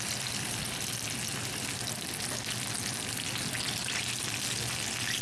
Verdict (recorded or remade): recorded